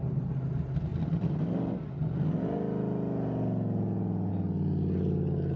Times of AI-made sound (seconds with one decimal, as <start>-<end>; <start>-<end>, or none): none